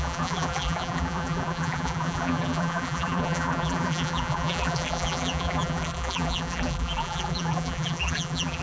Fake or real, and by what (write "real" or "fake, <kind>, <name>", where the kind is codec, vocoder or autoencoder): fake, vocoder, BigVGAN v2